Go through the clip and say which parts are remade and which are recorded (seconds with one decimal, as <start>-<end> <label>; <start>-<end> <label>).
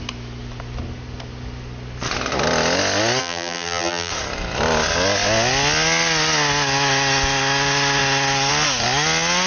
0.0-3.2 recorded; 3.2-4.1 remade; 4.1-9.5 recorded